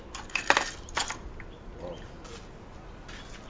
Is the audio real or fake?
real